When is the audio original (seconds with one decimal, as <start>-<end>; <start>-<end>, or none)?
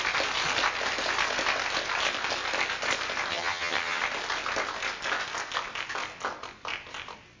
0.0-3.3; 4.0-7.4